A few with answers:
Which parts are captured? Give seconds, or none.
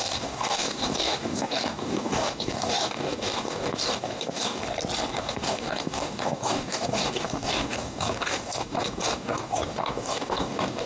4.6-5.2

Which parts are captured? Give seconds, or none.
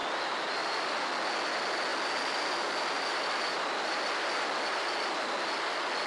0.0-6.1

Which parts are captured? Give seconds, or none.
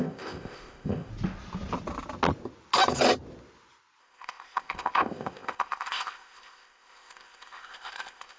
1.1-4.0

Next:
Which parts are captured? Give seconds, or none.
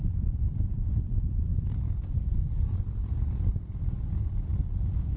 none